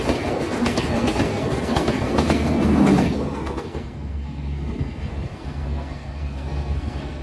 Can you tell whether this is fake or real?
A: fake